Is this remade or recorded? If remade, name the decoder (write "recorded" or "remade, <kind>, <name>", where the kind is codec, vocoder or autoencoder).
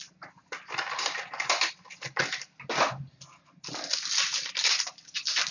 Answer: recorded